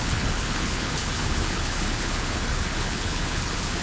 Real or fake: fake